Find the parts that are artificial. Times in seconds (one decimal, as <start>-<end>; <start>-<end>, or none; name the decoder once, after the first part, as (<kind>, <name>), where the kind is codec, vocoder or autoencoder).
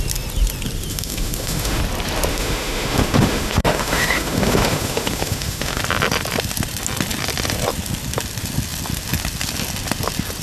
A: 0.9-1.8 (autoencoder, DAC-VAE); 2.3-5.8